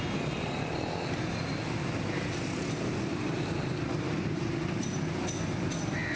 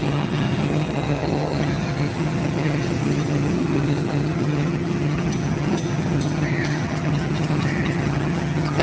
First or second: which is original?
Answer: first